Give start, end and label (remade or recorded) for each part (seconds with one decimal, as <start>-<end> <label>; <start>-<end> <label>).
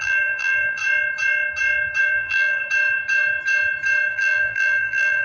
0.0-0.8 remade; 0.8-2.0 recorded; 2.0-2.6 remade; 2.6-4.1 recorded; 4.1-5.2 remade